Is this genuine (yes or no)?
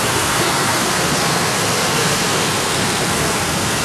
no